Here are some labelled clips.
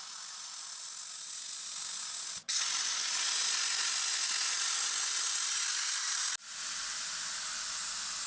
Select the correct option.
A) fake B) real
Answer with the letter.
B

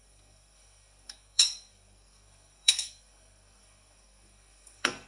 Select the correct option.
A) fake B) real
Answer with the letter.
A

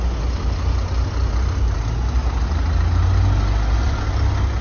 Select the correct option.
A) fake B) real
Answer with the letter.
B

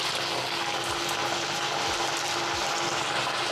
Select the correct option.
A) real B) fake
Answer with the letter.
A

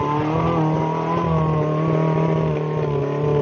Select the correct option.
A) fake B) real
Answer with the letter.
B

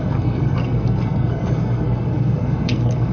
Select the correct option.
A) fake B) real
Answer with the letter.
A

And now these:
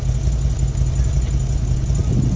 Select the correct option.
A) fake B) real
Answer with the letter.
B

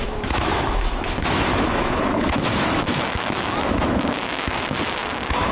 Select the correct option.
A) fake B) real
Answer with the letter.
A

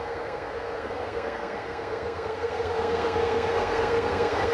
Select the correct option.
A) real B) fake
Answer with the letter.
B